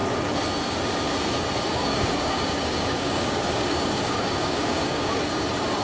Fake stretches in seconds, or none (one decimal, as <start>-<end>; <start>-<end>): 1.7-5.2